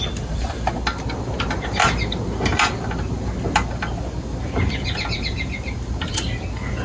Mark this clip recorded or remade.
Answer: recorded